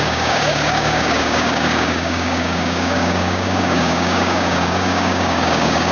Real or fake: fake